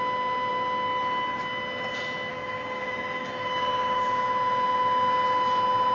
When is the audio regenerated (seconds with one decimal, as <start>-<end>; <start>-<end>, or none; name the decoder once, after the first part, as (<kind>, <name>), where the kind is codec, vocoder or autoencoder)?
2.3-4.0 (codec, DAC)